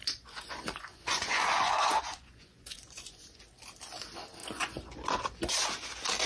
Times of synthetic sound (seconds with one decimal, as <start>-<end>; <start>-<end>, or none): 0.0-3.4; 4.4-5.2